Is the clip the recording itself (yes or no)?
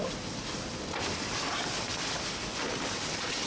yes